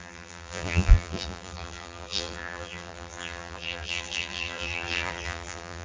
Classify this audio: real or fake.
fake